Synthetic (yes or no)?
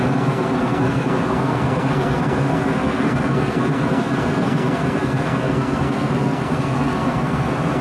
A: yes